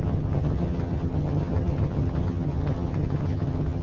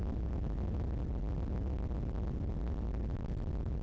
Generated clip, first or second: first